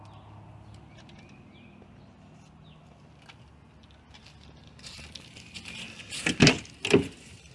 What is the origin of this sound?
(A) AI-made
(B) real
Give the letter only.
B